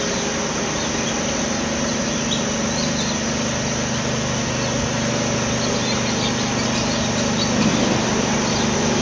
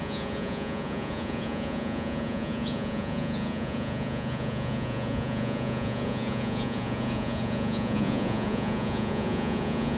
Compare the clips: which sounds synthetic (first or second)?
second